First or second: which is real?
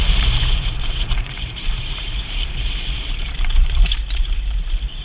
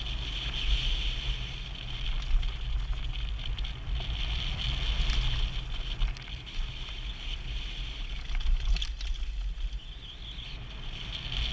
second